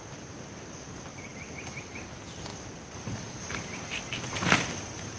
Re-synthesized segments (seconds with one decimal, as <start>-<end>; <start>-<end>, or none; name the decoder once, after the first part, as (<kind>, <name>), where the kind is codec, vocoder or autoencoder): none